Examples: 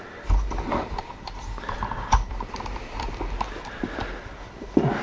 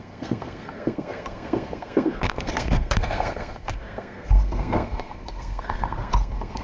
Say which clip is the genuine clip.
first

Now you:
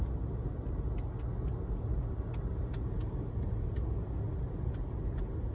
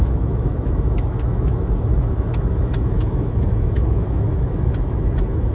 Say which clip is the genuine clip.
first